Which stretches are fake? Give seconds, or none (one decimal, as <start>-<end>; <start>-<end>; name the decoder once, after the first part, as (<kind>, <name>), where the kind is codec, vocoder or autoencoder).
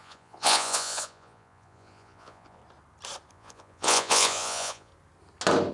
0.0-2.6 (vocoder, Vocos); 3.3-4.9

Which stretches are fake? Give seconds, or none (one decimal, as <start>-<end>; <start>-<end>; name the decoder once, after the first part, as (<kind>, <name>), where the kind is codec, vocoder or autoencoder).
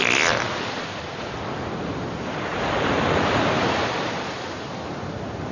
none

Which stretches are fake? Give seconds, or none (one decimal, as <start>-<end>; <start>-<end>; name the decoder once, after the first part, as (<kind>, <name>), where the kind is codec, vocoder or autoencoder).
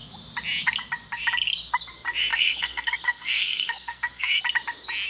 2.3-4.4 (codec, SNAC)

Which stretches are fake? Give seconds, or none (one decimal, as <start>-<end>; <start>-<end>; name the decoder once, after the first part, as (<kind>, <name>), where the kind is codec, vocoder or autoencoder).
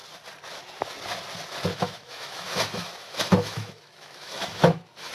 1.7-5.1 (autoencoder, DAC-VAE)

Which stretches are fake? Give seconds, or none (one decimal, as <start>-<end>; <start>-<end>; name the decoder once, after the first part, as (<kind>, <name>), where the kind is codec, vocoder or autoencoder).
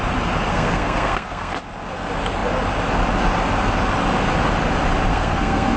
0.5-1.6 (codec, SNAC); 5.1-5.8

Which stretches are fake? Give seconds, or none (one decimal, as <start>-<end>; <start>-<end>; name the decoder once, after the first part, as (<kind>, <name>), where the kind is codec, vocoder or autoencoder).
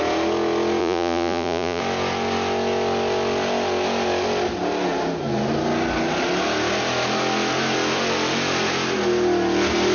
0.8-1.8 (vocoder, Vocos)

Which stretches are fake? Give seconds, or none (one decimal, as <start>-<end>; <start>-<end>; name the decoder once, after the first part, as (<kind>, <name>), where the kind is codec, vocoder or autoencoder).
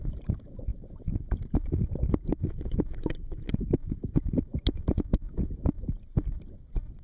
none